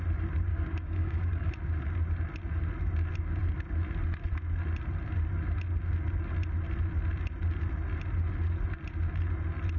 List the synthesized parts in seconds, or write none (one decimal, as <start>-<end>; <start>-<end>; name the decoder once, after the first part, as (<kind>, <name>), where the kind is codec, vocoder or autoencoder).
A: 0.5-1.5 (codec, DAC)